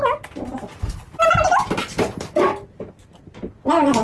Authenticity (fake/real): real